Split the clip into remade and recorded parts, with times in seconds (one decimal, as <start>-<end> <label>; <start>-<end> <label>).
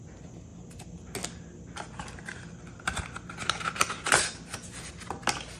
0.0-5.6 recorded